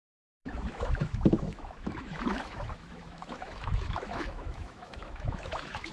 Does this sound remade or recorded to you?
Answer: remade